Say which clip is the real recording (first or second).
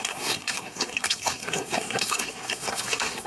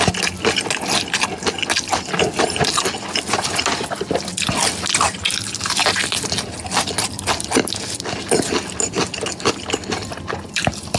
second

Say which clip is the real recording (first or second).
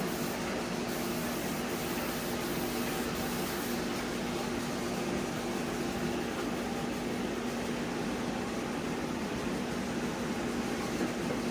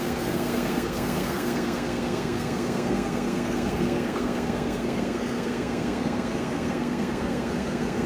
first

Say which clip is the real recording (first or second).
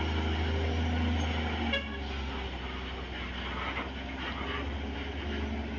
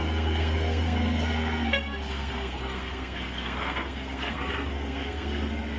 first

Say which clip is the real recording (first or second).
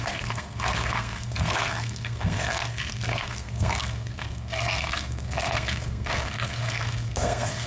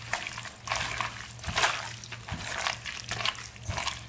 second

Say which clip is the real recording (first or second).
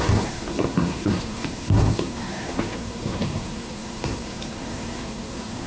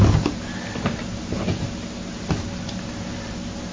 second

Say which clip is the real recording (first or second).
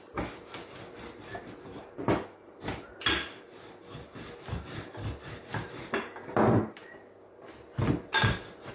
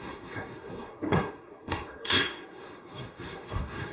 first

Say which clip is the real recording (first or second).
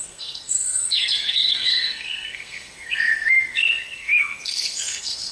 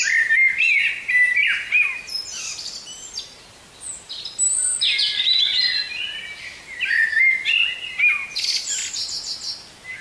second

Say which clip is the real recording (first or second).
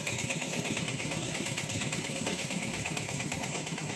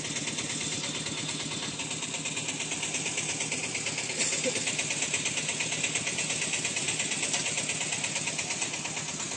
second